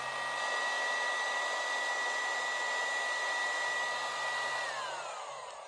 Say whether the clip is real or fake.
real